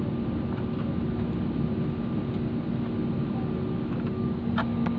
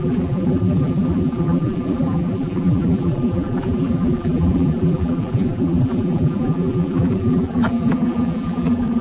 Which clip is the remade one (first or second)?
second